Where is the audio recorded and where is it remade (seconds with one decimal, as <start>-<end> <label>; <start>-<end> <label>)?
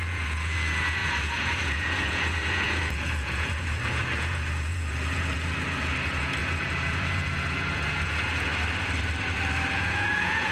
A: 0.0-8.5 remade; 8.5-9.7 recorded; 9.7-10.5 remade